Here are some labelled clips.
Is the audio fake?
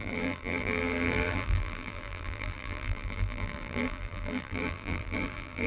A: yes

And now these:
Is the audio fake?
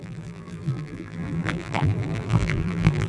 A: yes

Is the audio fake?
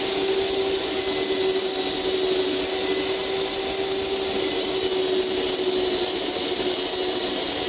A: no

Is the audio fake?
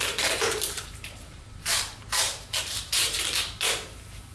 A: yes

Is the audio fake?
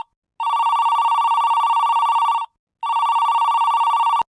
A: no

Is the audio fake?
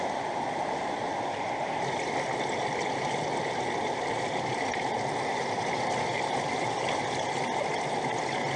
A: no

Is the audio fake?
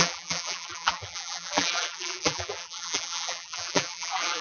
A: yes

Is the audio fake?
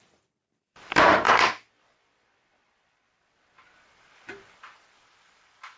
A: yes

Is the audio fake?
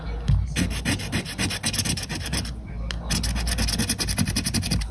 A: no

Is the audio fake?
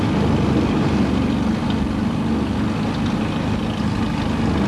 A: no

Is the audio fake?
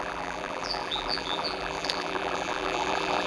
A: yes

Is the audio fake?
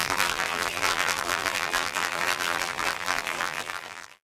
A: yes